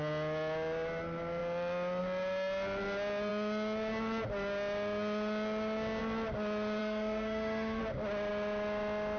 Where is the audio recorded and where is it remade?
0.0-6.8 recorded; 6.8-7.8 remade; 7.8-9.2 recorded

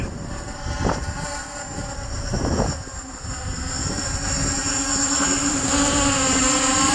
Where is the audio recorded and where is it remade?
0.0-4.6 remade; 4.6-5.5 recorded; 5.5-6.9 remade

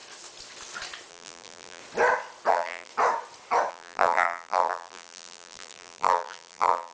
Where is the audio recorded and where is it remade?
0.0-1.1 recorded; 1.1-1.8 remade; 1.8-2.5 recorded; 2.5-2.9 remade; 2.9-3.7 recorded; 3.7-6.9 remade

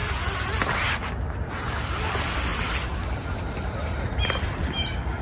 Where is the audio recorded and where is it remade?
0.0-2.5 recorded; 2.5-5.2 remade

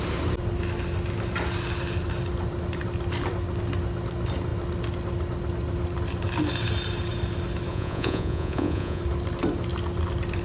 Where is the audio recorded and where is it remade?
0.0-7.7 recorded; 7.7-9.0 remade; 9.0-10.4 recorded